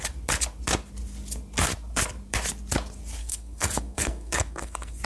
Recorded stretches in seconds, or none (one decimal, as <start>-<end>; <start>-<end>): 0.0-3.2